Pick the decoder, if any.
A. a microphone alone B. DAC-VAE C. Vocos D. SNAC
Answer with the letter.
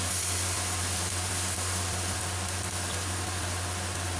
A